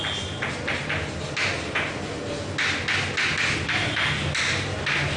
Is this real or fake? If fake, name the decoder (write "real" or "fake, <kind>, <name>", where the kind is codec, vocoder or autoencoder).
real